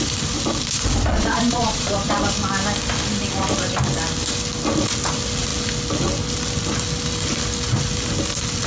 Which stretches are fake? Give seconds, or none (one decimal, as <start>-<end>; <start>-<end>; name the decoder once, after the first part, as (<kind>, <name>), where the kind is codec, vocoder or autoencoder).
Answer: 1.1-2.1 (vocoder, Vocos)